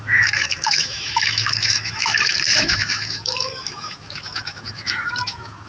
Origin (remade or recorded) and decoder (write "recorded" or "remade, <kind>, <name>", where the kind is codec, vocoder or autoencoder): remade, autoencoder, DAC-VAE